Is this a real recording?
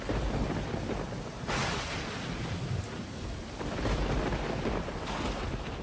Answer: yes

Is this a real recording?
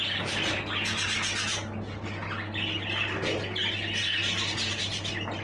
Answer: yes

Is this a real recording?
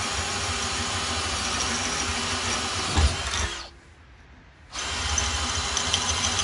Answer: yes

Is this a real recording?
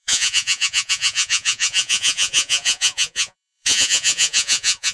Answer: no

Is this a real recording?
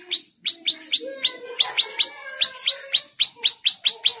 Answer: yes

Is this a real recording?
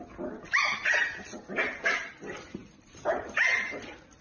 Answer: yes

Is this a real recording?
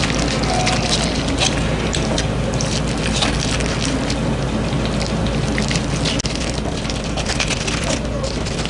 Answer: yes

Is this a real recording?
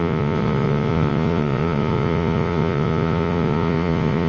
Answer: no